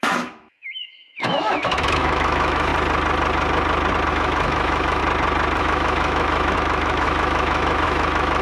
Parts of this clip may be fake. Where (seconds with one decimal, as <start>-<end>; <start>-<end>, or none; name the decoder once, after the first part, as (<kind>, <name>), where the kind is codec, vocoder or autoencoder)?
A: 0.0-2.7 (autoencoder, DAC-VAE); 4.1-5.0; 5.6-8.4